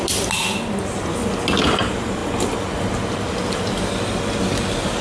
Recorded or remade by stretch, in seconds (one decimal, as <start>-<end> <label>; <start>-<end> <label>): 0.0-5.0 recorded